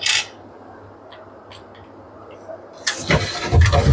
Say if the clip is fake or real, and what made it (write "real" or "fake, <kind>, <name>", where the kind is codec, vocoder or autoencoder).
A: real